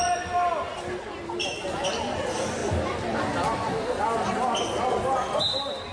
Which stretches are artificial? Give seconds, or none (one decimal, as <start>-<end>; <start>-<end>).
none